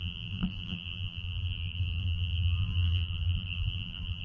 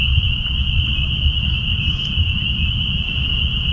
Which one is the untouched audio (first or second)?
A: second